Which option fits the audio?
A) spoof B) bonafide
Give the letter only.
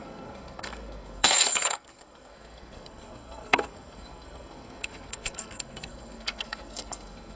A